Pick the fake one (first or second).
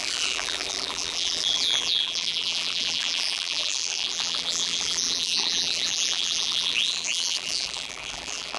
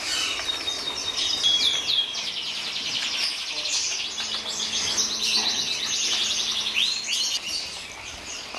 first